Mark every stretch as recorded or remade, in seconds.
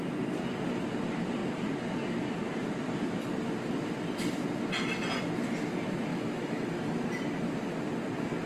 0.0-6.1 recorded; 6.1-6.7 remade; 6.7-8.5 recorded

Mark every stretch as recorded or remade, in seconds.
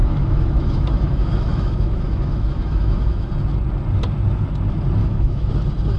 0.0-3.3 remade; 3.3-5.0 recorded; 5.0-5.5 remade; 5.5-6.0 recorded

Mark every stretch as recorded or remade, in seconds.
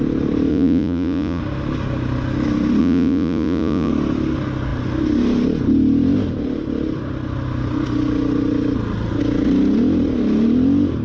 0.0-0.5 recorded; 0.5-1.4 remade; 1.4-2.8 recorded; 2.8-3.9 remade; 3.9-11.0 recorded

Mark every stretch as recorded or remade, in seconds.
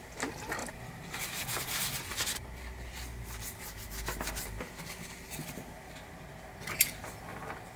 0.0-0.6 recorded; 0.6-1.6 remade; 1.6-7.8 recorded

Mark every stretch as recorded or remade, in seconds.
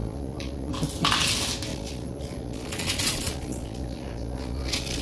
0.0-0.7 remade; 0.7-1.7 recorded; 1.7-5.0 remade